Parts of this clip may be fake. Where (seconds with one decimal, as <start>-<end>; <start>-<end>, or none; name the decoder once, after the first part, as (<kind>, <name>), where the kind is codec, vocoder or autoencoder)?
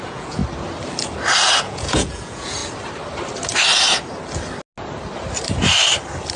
0.0-0.4 (vocoder, Vocos); 1.6-2.6